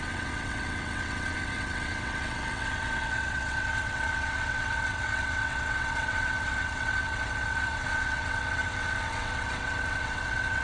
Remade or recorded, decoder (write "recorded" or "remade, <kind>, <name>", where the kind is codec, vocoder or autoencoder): remade, vocoder, WaveNeXt